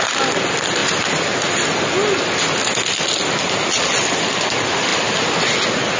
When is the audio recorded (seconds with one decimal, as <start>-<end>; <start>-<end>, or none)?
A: 0.0-6.0